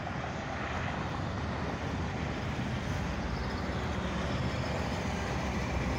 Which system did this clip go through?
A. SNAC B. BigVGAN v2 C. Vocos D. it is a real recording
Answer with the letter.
D